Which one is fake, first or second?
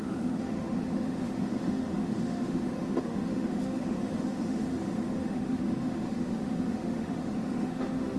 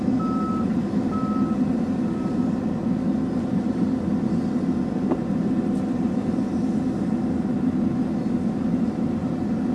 first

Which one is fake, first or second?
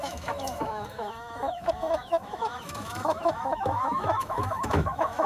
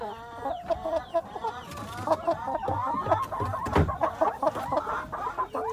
first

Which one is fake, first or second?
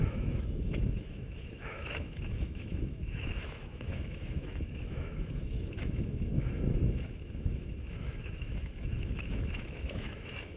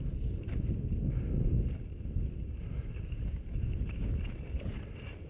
first